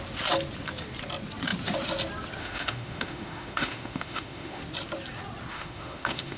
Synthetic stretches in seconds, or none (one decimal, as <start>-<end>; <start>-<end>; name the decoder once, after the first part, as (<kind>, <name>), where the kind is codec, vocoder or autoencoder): 2.4-4.6 (autoencoder, DAC-VAE); 5.5-6.4